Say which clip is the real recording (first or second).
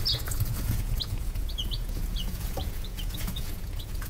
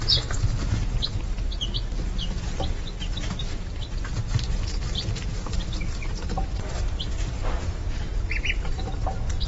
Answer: second